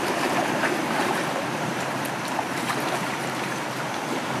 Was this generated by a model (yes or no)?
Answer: yes